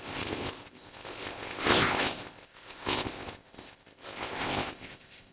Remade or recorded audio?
remade